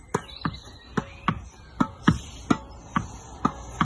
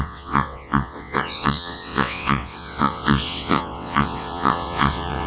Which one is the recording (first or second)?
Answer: first